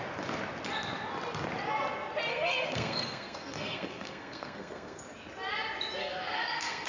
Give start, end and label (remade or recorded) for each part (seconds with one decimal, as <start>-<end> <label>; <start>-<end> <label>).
0.0-2.3 recorded; 2.3-5.0 remade; 5.0-6.0 recorded; 6.0-6.9 remade